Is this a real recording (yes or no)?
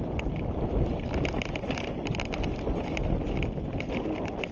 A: yes